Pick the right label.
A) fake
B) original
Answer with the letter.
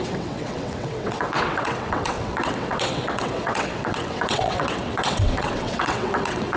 A